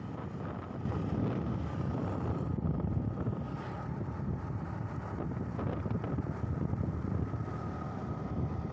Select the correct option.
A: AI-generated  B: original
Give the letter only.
B